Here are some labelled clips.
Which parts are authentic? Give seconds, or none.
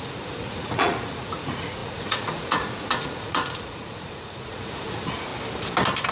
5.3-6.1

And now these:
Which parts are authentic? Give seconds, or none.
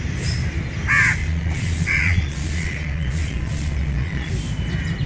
0.0-1.2; 4.3-5.1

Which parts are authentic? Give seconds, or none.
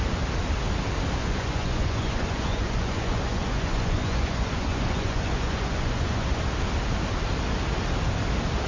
0.0-1.2; 6.4-8.7